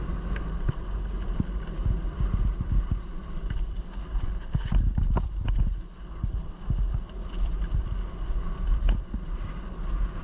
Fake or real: real